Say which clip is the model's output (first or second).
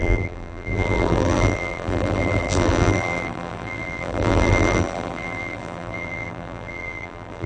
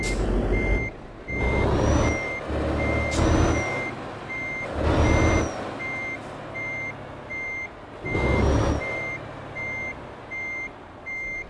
first